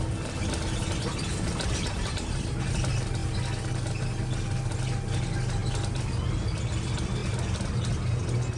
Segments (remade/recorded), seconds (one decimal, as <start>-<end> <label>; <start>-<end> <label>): 0.0-1.3 recorded; 1.3-2.7 remade; 2.7-8.6 recorded